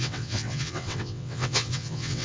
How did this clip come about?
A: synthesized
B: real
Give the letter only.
A